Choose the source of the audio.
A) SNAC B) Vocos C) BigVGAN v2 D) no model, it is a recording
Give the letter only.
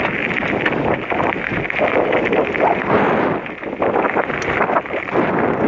D